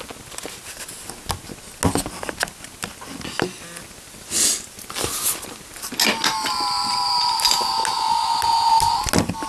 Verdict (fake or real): real